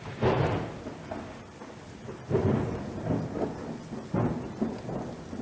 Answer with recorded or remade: recorded